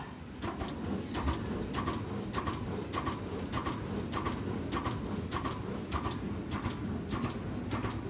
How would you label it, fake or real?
real